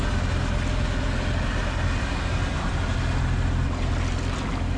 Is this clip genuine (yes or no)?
yes